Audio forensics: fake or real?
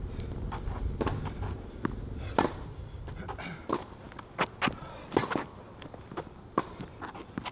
real